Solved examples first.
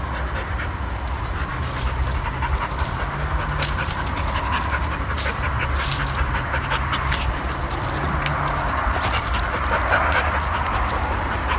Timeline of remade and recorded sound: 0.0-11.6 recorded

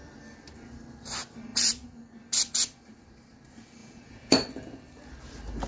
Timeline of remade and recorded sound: 0.0-3.8 recorded; 3.8-4.3 remade; 4.3-5.7 recorded

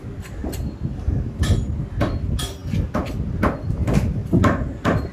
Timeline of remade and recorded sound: 0.0-5.1 recorded

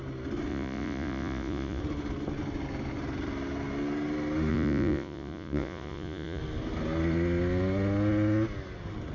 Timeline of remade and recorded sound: 0.0-0.5 recorded; 0.5-1.8 remade; 1.8-4.5 recorded; 4.5-6.4 remade; 6.4-9.1 recorded